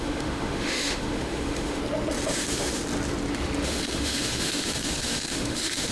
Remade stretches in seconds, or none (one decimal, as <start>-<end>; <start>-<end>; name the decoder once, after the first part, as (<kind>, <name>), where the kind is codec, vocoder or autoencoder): 0.0-1.8 (autoencoder, DAC-VAE); 2.3-2.8; 3.6-5.9